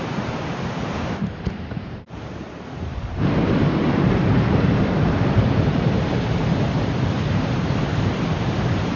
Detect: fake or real fake